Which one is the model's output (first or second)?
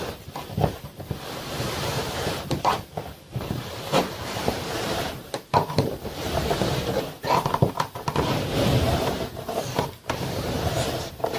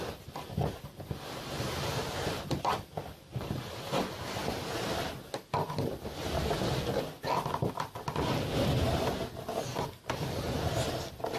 first